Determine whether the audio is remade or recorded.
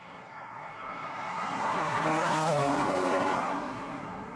remade